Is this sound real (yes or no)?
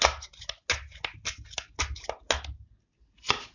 yes